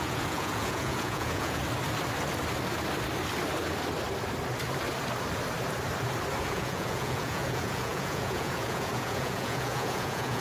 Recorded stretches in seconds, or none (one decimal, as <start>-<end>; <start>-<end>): 1.6-6.4